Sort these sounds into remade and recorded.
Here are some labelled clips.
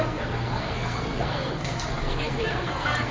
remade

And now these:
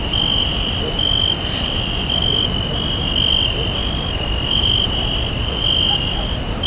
recorded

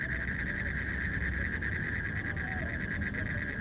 recorded